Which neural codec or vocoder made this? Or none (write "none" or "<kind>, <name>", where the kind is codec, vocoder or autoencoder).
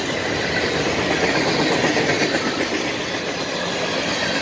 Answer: none